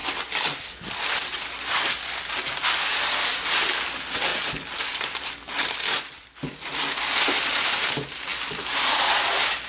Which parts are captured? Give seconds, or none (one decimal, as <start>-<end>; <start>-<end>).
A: 2.6-4.3; 5.3-9.7